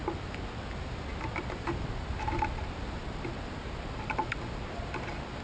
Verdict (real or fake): real